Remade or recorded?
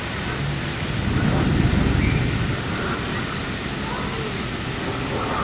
recorded